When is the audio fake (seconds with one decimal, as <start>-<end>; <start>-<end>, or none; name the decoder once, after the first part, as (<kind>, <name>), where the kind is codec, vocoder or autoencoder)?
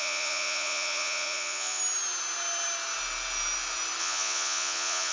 0.0-1.8 (vocoder, Vocos); 4.0-5.1